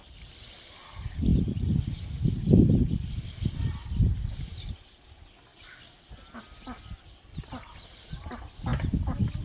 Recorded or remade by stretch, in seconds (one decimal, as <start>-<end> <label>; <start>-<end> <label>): 0.0-9.4 recorded